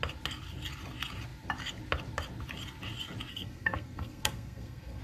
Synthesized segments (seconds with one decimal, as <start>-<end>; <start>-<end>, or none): 3.3-5.0